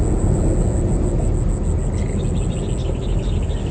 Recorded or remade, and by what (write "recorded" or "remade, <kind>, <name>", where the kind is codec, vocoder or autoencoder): recorded